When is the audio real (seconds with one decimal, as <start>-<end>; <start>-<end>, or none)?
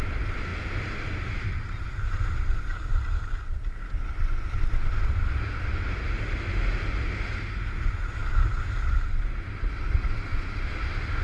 0.0-11.2